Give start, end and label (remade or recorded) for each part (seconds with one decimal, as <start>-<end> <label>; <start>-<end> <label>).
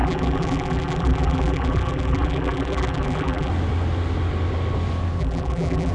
0.0-3.5 remade; 3.5-5.2 recorded; 5.2-5.9 remade